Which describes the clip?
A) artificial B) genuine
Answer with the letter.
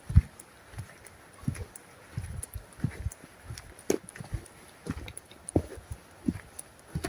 B